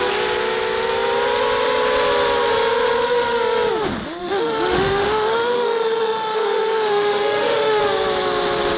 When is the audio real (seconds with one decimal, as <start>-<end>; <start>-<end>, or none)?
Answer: 0.0-4.2; 7.8-8.8